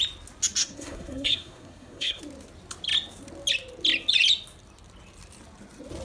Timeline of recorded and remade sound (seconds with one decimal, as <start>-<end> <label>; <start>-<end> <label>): 0.0-0.6 recorded; 0.6-2.2 remade; 2.2-6.0 recorded